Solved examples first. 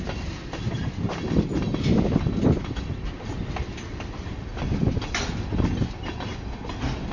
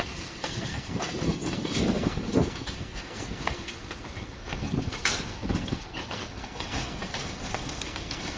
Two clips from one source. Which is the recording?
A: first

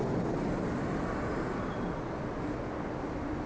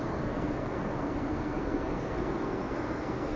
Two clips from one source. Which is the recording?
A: first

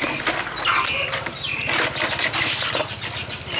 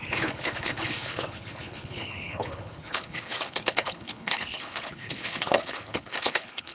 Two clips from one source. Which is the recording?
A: first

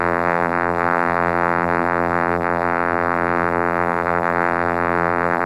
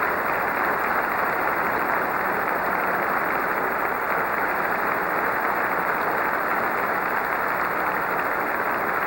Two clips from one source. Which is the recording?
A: second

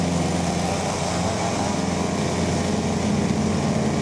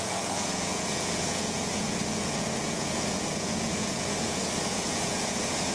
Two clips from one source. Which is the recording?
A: first